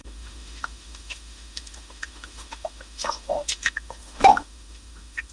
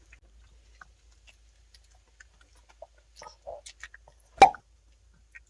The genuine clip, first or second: second